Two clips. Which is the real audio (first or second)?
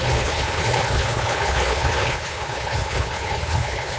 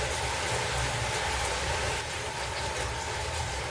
second